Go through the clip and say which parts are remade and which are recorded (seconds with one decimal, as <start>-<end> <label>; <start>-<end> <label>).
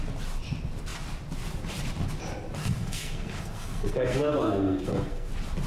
0.0-2.6 recorded; 2.6-5.3 remade; 5.3-5.7 recorded